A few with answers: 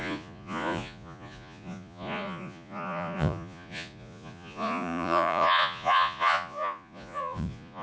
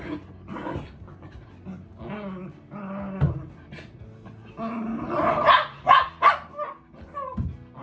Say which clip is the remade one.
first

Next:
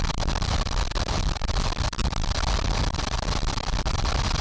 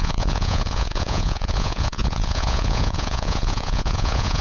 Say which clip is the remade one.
second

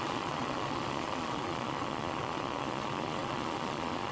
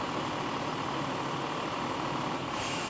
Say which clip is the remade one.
first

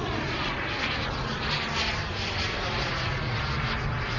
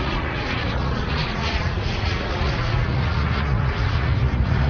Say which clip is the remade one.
second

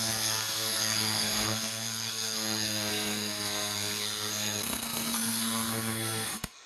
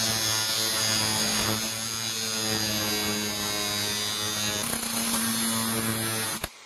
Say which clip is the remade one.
first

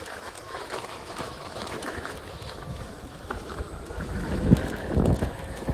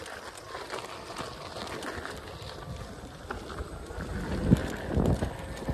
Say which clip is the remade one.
first